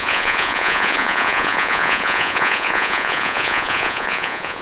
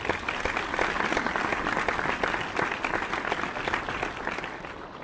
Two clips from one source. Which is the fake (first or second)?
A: first